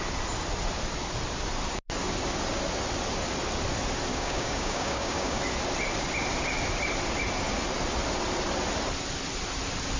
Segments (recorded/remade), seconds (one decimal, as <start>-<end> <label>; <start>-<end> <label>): 0.0-4.1 recorded; 4.1-5.4 remade; 5.4-10.0 recorded

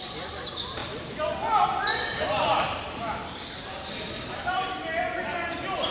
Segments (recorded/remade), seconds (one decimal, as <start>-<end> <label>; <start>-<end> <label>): 0.0-5.9 recorded

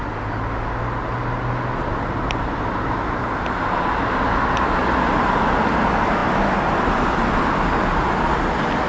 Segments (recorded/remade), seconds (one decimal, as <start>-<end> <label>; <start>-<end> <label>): 0.0-8.9 recorded

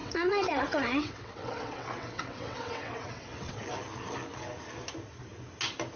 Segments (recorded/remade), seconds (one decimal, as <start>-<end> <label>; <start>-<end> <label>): 0.0-3.6 remade; 3.6-6.0 recorded

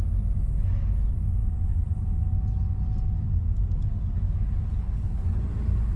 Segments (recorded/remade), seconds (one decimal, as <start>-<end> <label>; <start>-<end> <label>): 0.0-4.7 recorded; 4.7-5.4 remade; 5.4-6.0 recorded

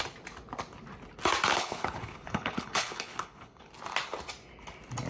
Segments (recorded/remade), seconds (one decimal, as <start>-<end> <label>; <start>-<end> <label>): 0.0-1.5 recorded; 1.5-3.7 remade; 3.7-5.1 recorded